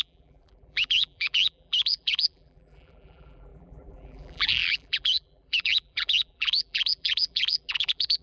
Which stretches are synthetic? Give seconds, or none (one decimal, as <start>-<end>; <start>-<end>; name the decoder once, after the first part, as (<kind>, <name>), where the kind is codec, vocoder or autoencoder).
0.0-8.2 (vocoder, BigVGAN v2)